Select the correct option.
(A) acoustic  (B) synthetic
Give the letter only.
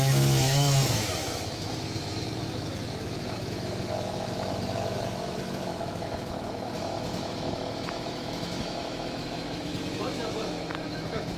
B